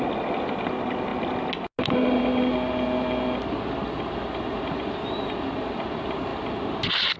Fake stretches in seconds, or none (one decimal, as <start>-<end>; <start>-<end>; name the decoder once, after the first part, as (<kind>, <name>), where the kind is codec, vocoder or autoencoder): none